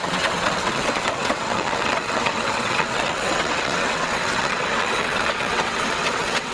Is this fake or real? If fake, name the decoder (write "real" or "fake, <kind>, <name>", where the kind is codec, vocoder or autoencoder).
fake, vocoder, WaveNeXt